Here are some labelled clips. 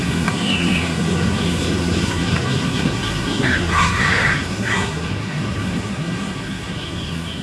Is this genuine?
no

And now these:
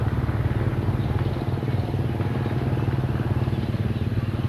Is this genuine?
yes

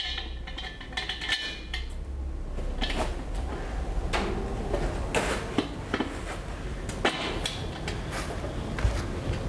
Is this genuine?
yes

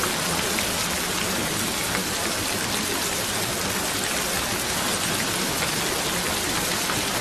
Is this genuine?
yes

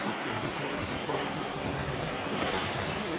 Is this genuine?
no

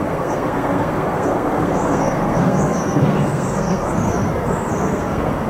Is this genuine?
no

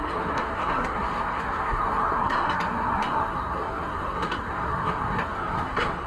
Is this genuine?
no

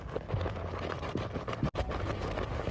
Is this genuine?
yes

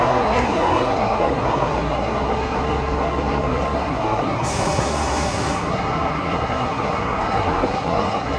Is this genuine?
no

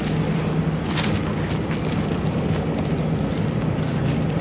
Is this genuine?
yes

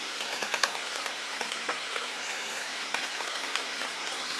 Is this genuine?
no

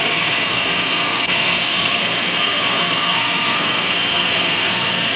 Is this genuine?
no